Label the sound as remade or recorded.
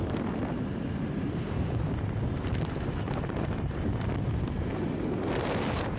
remade